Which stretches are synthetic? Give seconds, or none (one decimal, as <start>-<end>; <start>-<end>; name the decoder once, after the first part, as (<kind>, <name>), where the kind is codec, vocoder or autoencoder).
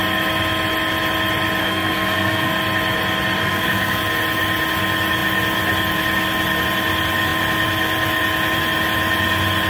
1.6-2.5 (codec, SNAC); 3.4-4.0